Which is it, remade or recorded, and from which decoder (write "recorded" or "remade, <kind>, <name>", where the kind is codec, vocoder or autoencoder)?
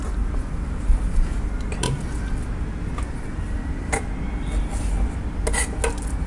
recorded